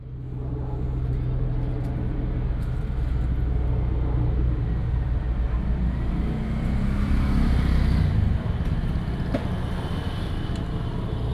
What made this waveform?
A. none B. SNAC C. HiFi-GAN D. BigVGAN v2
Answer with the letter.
A